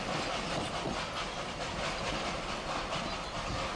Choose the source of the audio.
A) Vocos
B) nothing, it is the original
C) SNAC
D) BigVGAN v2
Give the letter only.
B